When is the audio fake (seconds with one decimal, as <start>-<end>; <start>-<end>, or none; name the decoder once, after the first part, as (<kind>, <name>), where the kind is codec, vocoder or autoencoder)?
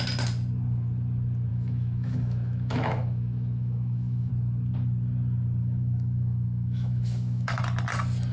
1.5-4.3 (autoencoder, DAC-VAE); 5.6-7.6